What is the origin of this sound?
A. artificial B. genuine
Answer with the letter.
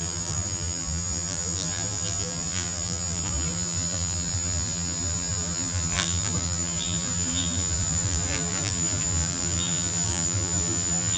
A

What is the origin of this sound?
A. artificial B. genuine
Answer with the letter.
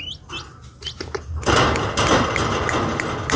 B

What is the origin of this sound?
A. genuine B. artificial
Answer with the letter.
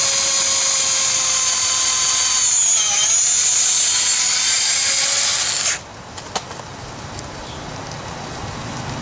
A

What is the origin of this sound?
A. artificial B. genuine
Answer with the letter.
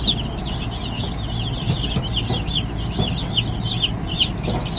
B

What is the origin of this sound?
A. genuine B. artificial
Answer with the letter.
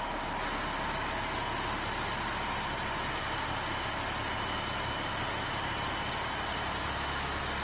A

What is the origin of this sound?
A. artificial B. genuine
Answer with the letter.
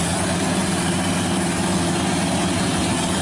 B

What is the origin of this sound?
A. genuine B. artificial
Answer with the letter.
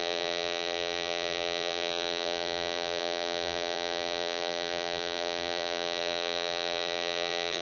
B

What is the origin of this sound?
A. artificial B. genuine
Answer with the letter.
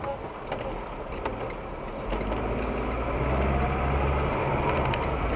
B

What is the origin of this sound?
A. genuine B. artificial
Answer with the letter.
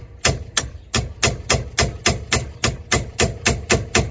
A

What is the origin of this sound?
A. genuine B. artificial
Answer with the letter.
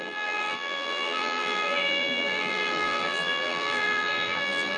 B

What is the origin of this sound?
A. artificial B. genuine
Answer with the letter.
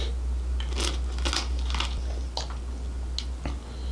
B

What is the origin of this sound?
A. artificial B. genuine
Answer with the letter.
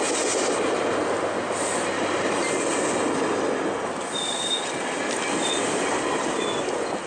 B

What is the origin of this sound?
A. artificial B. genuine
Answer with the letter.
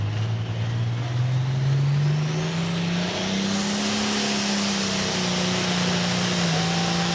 B